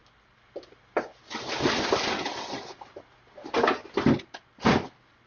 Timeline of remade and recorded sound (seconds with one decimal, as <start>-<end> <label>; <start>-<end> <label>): 0.0-5.3 recorded